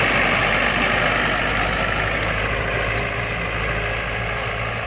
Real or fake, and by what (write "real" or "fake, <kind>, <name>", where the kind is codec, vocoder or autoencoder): real